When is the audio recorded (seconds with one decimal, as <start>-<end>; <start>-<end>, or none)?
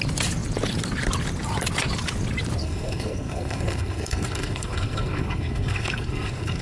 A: 0.0-2.6